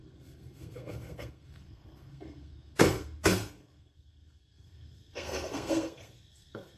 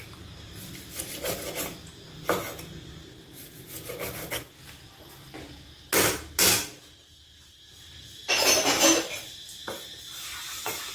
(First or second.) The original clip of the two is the second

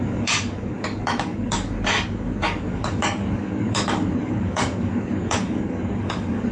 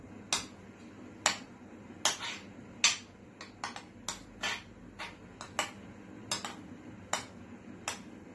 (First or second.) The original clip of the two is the second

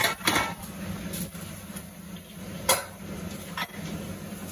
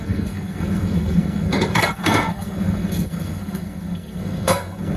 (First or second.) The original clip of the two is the first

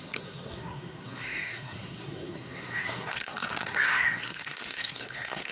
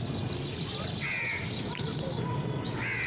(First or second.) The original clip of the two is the second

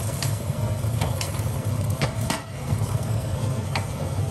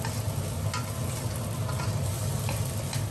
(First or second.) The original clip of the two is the second